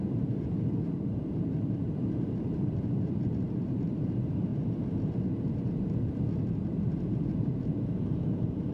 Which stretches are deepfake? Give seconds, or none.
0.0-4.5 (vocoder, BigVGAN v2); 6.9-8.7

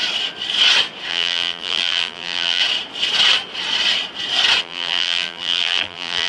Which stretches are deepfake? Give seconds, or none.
1.1-2.6 (vocoder, BigVGAN v2); 4.6-6.3